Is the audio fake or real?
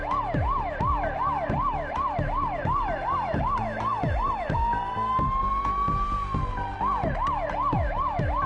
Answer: real